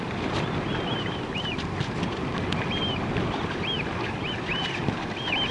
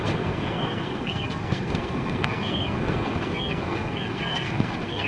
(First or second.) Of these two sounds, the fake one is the second